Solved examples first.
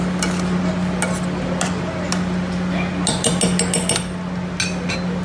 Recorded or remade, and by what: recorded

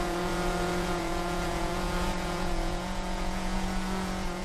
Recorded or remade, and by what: remade, vocoder, Vocos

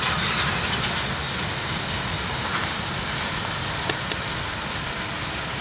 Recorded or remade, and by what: recorded